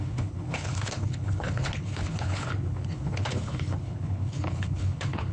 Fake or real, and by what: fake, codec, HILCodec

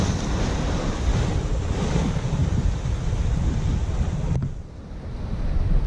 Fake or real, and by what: fake, vocoder, BigVGAN v2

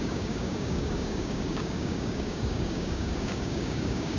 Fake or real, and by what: fake, codec, DAC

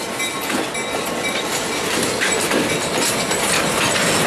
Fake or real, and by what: real